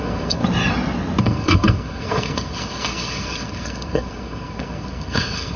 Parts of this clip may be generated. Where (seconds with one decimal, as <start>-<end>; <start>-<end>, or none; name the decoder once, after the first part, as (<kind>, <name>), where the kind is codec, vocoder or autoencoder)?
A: 0.0-0.4 (codec, SNAC); 1.2-5.6